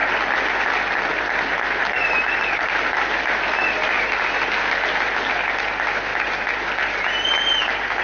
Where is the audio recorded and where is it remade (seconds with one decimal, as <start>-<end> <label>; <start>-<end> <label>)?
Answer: 0.0-8.0 recorded